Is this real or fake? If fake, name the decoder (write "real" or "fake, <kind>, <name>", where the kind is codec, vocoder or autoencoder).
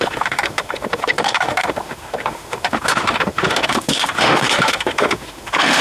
fake, autoencoder, DAC-VAE